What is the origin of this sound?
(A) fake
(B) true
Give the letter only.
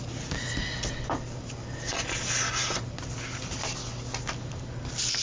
B